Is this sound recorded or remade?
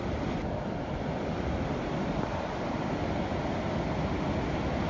recorded